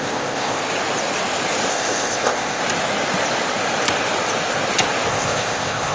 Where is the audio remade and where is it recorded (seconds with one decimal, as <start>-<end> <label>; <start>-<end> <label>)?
0.0-0.6 remade; 0.6-1.7 recorded; 1.7-2.6 remade; 2.6-5.1 recorded; 5.1-5.9 remade